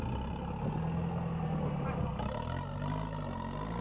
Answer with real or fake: real